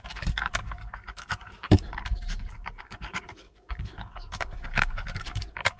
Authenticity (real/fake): fake